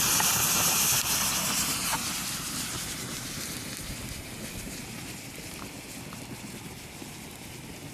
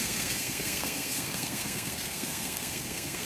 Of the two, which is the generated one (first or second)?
second